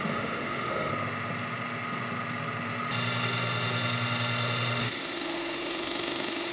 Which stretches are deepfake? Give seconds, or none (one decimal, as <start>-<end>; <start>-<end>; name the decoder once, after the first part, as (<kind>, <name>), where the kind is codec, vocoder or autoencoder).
0.0-0.9 (autoencoder, DAC-VAE); 4.8-6.5